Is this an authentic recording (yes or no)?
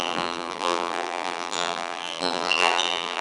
no